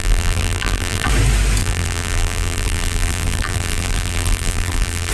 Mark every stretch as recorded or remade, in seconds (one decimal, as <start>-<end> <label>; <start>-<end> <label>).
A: 0.0-1.1 remade; 1.1-1.6 recorded; 1.6-5.1 remade